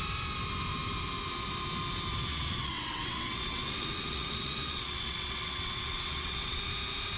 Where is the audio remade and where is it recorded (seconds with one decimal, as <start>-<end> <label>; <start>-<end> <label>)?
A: 0.0-2.3 recorded; 2.3-6.6 remade; 6.6-7.2 recorded